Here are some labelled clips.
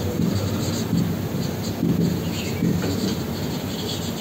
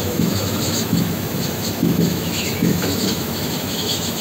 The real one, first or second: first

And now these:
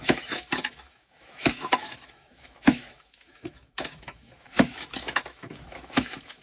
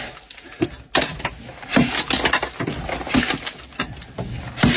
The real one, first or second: second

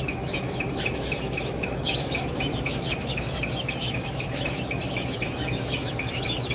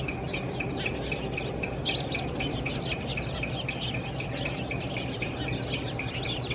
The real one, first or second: second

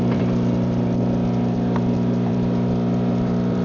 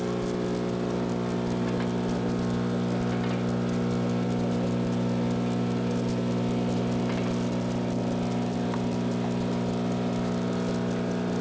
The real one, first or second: second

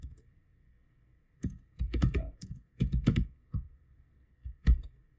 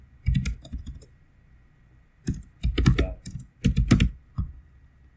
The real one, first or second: second